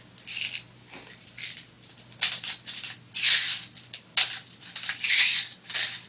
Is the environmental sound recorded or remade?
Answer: recorded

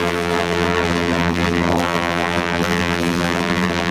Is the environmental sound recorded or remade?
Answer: remade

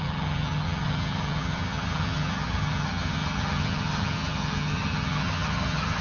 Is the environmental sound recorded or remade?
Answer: remade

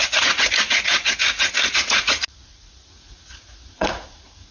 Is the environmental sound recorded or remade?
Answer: remade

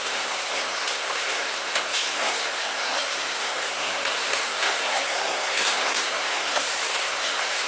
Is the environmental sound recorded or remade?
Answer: remade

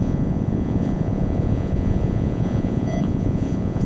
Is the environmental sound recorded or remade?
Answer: remade